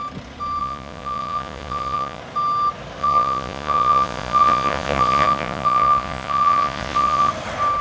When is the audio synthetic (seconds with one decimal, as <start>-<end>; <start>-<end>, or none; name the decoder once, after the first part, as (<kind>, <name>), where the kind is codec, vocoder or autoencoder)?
0.6-2.2 (vocoder, Vocos); 3.0-7.3